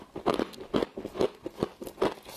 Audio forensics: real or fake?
real